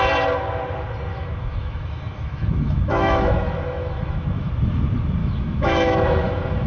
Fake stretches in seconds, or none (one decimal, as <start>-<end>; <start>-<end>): 1.1-4.5; 5.2-6.7